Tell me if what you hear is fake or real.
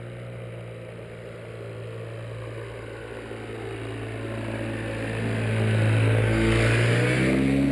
real